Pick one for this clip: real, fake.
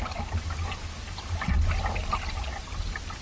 real